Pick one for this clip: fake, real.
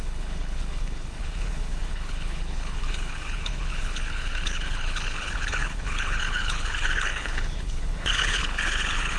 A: fake